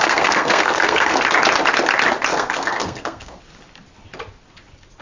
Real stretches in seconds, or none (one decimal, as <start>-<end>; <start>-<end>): 1.2-2.3; 3.4-5.0